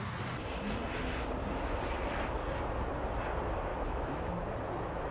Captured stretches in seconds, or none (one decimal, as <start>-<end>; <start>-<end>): 0.0-3.7; 4.3-5.1